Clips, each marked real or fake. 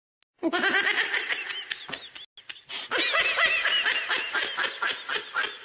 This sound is real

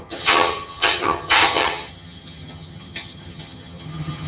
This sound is fake